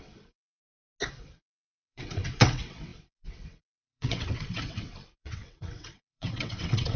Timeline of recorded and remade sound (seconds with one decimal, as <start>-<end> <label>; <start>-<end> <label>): 0.0-0.6 remade; 0.6-1.1 recorded; 1.1-7.0 remade